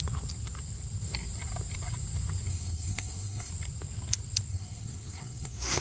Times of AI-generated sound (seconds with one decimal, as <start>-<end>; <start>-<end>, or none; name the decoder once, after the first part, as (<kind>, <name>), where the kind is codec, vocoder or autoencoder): 2.5-3.5 (codec, SNAC); 4.5-5.8